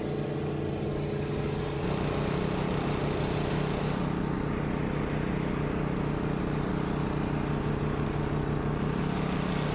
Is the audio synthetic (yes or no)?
no